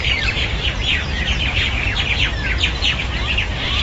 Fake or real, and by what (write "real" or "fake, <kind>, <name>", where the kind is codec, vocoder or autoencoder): fake, vocoder, BigVGAN v2